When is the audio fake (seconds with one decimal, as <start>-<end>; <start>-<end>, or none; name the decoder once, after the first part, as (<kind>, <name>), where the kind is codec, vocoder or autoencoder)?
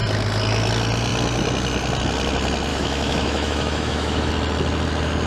2.7-4.3 (autoencoder, DAC-VAE)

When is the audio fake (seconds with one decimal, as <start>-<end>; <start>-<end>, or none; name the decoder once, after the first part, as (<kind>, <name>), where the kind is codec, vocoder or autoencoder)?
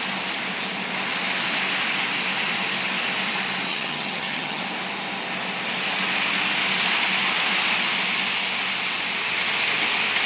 3.7-4.6 (vocoder, HiFi-GAN)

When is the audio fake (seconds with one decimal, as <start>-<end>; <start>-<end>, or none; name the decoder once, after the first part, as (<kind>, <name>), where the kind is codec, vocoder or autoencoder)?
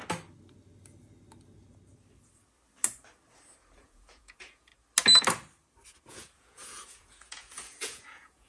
3.8-4.7 (vocoder, Vocos); 6.1-8.5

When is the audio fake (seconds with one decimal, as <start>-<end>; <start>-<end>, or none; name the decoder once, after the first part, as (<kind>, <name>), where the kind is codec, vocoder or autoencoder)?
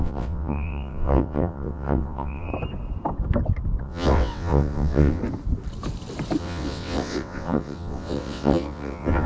0.0-2.5 (vocoder, WaveNeXt); 3.8-5.2; 6.4-9.3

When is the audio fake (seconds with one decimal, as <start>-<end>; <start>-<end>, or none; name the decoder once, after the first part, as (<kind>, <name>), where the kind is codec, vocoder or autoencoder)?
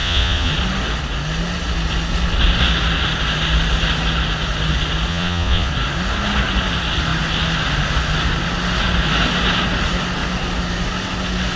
0.0-0.5 (vocoder, Vocos); 5.1-5.7